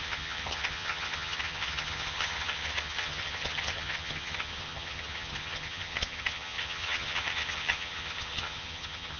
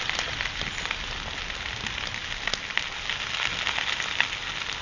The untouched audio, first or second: second